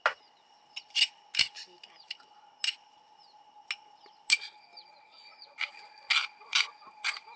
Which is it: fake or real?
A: real